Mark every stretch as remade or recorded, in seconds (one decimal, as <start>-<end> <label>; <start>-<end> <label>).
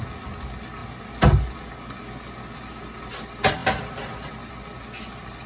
0.0-5.5 recorded